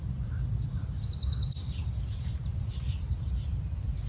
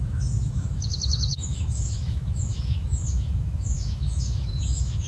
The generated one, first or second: second